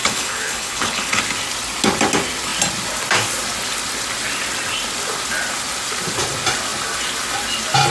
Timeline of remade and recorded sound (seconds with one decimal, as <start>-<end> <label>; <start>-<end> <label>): 0.0-1.2 remade; 1.2-7.9 recorded